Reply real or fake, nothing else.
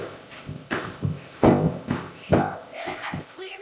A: fake